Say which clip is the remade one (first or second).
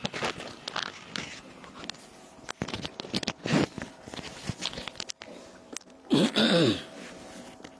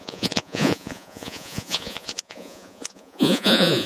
second